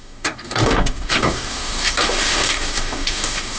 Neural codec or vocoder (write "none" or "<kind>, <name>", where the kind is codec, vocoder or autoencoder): codec, DAC